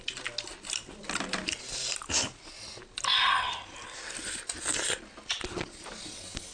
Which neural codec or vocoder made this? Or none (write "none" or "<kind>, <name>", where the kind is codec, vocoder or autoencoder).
none